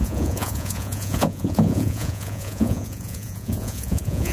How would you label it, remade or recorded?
remade